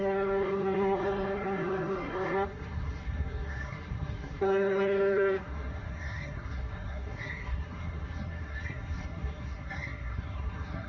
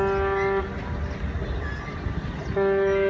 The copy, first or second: first